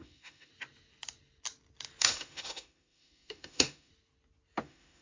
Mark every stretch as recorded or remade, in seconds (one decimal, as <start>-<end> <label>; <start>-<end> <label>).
0.0-0.5 remade; 0.5-2.0 recorded; 2.0-3.9 remade; 3.9-4.6 recorded; 4.6-5.0 remade